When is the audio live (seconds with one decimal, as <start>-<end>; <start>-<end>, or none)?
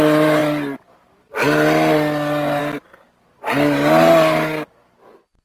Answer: 0.0-5.4